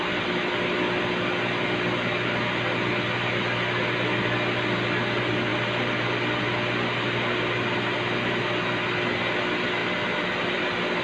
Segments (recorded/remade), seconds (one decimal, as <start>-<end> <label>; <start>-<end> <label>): 0.0-5.5 recorded; 5.5-6.4 remade; 6.4-11.0 recorded